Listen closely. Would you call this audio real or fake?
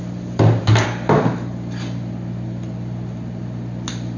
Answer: real